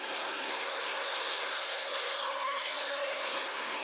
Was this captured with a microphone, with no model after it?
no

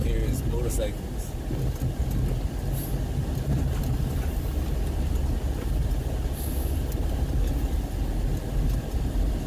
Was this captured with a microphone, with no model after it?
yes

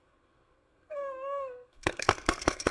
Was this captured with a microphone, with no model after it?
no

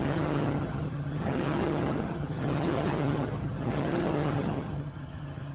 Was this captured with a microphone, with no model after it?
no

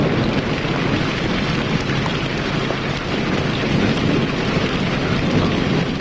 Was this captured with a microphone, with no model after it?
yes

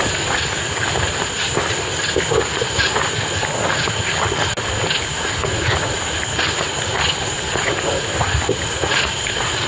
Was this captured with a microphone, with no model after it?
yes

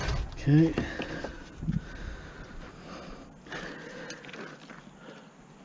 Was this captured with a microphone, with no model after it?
yes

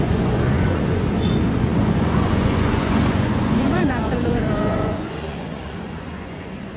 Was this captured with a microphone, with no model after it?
no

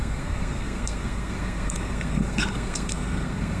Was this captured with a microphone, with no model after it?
no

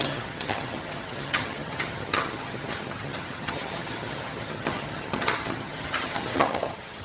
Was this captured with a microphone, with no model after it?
no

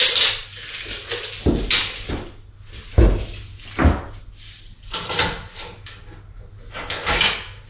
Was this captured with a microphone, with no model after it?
yes